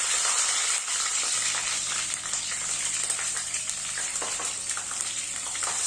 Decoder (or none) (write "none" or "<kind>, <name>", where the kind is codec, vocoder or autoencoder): vocoder, BigVGAN v2